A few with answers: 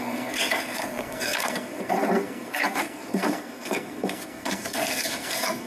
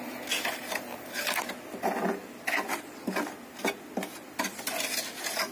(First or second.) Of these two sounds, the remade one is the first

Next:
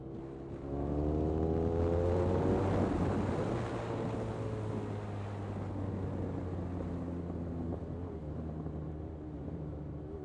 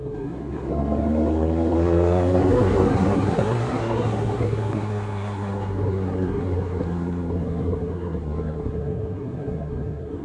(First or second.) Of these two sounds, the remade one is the second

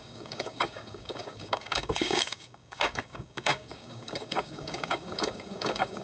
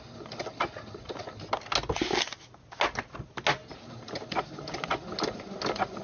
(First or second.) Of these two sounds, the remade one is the first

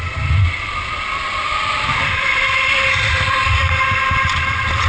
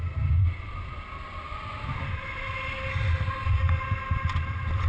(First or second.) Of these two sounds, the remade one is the first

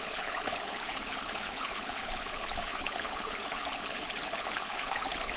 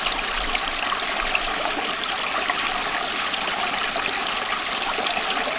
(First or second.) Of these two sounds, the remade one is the first